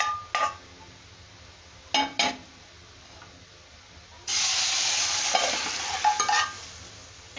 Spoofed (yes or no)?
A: no